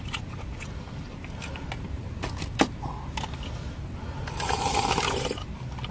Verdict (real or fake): real